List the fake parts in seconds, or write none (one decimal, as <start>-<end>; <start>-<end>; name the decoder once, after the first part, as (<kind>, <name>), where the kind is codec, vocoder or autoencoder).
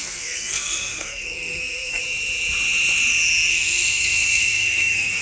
0.0-2.0 (codec, SNAC); 3.5-5.2